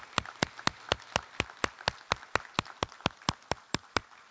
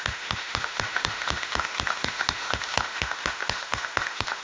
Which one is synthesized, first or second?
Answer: second